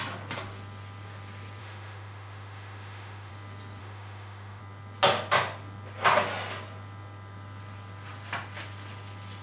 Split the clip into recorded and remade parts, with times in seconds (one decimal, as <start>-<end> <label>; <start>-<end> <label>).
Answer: 0.0-1.6 recorded; 1.6-3.3 remade; 3.3-3.8 recorded; 3.8-4.6 remade; 4.6-9.4 recorded